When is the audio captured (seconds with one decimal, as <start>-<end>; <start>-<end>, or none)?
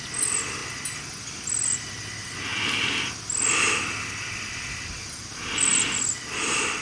0.0-6.8